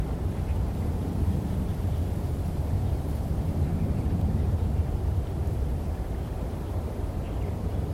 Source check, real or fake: fake